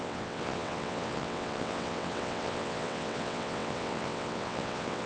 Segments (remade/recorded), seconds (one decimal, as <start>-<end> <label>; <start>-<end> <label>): 0.0-5.1 remade